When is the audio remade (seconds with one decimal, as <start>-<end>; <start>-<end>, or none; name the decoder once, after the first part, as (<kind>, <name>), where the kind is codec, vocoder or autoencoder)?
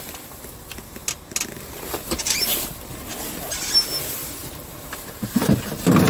4.4-6.1 (vocoder, BigVGAN v2)